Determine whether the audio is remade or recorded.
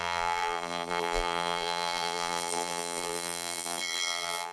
remade